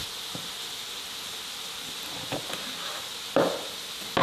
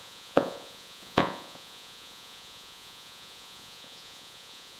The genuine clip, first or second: first